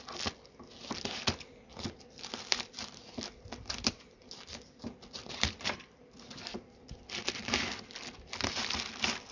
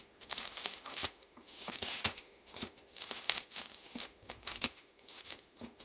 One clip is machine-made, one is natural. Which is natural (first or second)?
first